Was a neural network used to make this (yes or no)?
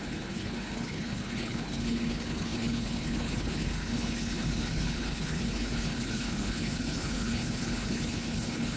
yes